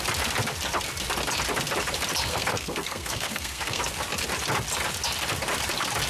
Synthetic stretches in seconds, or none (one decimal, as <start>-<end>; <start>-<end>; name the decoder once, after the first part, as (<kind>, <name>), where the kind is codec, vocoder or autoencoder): 2.3-3.8 (codec, SNAC)